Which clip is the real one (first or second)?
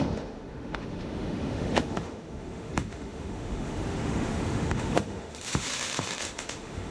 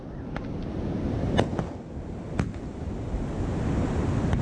second